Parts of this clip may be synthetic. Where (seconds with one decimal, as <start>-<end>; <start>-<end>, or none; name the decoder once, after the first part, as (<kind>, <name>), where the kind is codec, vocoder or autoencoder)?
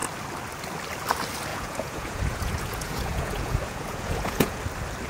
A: 1.5-4.6 (vocoder, Vocos)